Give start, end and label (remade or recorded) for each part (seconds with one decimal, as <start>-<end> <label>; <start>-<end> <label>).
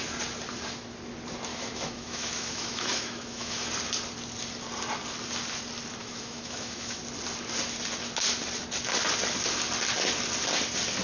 0.0-1.5 recorded; 1.5-3.7 remade; 3.7-6.0 recorded; 6.0-7.0 remade; 7.0-11.0 recorded